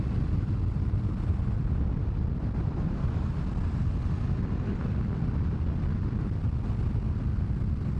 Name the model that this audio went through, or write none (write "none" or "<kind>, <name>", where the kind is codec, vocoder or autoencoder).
none